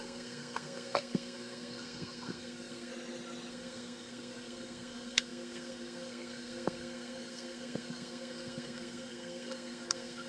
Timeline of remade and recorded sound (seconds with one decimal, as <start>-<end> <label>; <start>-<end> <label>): 0.0-2.9 remade; 2.9-3.5 recorded; 3.5-10.3 remade